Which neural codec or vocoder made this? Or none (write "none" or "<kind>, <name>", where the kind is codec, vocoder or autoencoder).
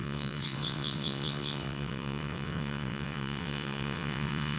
vocoder, WaveNeXt